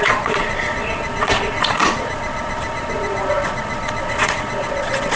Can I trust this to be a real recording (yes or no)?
no